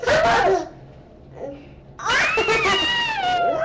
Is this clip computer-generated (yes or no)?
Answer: no